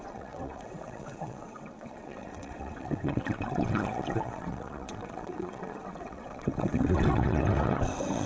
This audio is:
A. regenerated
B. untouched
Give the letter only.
A